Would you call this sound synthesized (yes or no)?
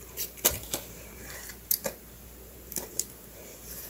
yes